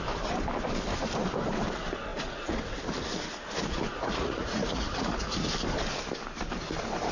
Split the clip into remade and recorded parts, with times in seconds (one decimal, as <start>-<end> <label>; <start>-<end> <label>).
0.0-2.1 recorded; 2.1-2.7 remade; 2.7-3.9 recorded; 3.9-5.5 remade; 5.5-7.1 recorded